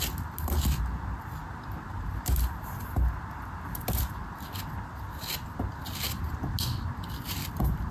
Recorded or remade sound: recorded